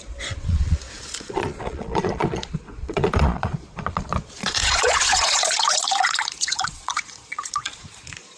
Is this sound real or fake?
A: fake